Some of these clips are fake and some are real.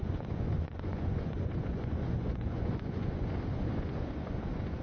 fake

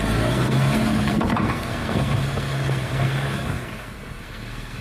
fake